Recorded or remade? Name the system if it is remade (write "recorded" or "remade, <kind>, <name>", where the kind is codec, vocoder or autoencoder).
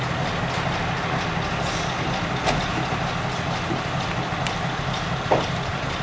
recorded